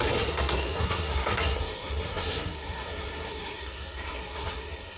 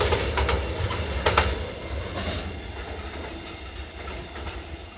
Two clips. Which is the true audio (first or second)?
second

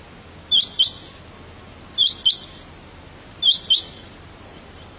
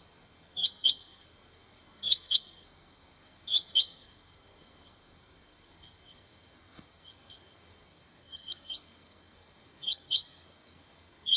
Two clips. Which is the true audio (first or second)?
first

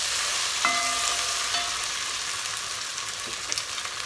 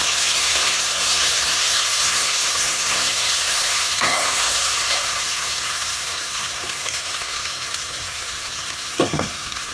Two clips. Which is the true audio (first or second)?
first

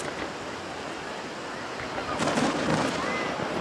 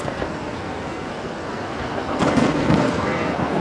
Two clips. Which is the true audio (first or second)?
first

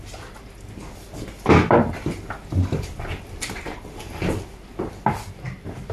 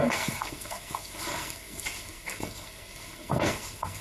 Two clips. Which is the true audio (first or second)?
first